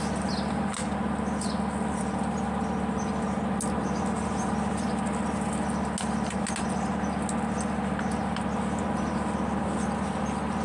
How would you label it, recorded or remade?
recorded